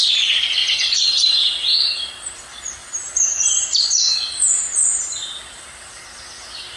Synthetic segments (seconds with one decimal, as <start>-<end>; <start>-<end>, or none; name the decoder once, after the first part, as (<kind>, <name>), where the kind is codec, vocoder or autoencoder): 0.6-2.1 (vocoder, BigVGAN v2); 2.8-6.0